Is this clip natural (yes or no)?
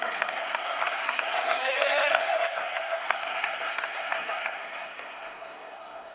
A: no